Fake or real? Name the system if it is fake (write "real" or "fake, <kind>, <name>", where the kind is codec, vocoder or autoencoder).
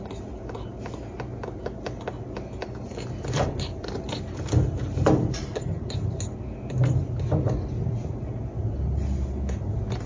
real